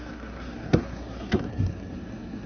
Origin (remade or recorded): remade